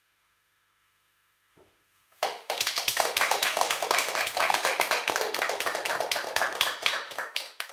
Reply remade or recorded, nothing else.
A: remade